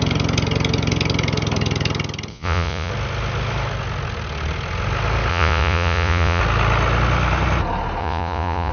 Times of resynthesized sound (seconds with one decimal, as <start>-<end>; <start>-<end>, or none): 2.3-2.9; 5.3-6.4; 8.0-8.7